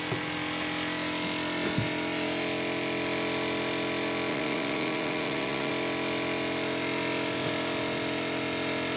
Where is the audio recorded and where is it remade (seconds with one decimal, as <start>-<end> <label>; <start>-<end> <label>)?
0.0-4.3 recorded; 4.3-5.7 remade; 5.7-9.0 recorded